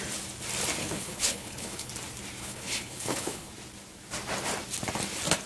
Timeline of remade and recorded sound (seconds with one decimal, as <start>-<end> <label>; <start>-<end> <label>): 0.0-0.8 recorded; 0.8-1.9 remade; 1.9-2.4 recorded; 2.4-3.5 remade; 3.5-5.5 recorded